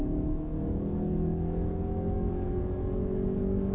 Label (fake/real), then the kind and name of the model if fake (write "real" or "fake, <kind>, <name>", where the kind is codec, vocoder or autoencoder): fake, codec, DAC